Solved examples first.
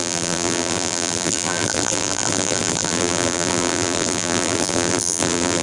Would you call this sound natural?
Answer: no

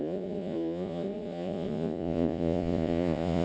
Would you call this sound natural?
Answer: no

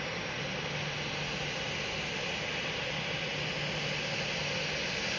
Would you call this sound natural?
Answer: yes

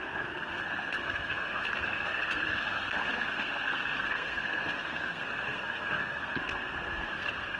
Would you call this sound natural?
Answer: no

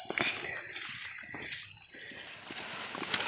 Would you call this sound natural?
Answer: yes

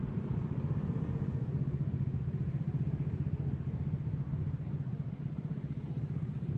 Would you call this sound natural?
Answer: yes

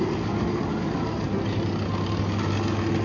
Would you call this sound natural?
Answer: yes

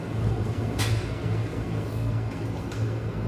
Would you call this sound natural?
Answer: no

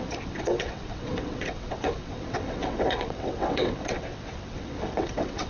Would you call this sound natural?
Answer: no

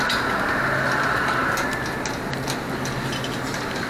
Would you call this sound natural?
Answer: yes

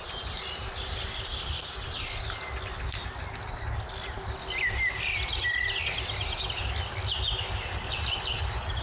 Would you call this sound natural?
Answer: yes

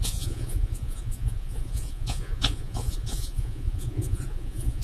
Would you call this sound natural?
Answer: no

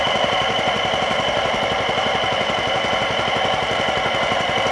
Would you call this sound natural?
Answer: no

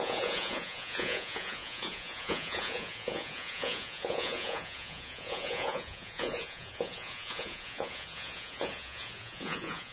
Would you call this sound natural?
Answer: no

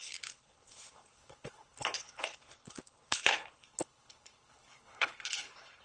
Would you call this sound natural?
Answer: no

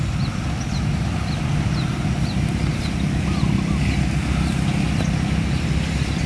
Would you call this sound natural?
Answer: yes